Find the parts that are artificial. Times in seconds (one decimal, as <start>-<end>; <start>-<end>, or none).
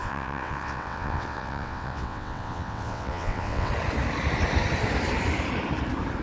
0.0-3.7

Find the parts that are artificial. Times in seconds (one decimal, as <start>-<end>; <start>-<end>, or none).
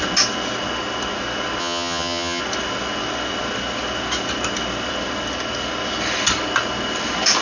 1.6-2.4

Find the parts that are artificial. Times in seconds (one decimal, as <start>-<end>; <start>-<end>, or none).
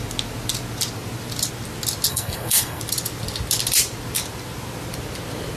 2.1-2.8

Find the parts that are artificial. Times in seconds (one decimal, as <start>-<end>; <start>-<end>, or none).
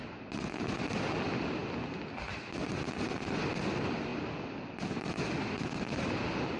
none